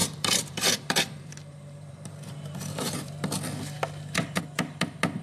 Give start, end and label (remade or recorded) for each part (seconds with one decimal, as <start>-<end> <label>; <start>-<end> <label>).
0.0-3.1 remade; 3.1-5.2 recorded